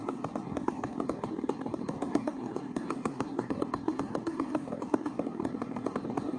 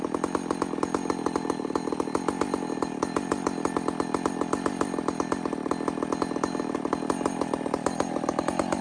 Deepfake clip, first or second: first